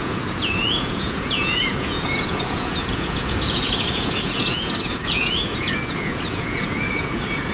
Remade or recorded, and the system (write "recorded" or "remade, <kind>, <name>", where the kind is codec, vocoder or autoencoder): remade, vocoder, Vocos